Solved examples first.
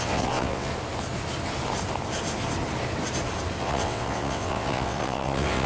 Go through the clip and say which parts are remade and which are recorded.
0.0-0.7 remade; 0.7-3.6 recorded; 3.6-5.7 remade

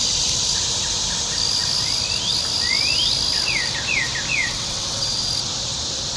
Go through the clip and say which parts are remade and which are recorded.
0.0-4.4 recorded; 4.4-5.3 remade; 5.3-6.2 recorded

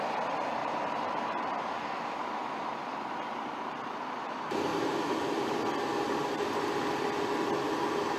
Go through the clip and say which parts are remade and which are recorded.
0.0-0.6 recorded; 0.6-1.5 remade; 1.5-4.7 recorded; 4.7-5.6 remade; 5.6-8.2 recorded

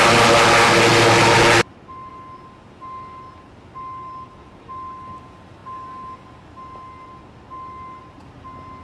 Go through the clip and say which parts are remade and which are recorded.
0.0-8.8 recorded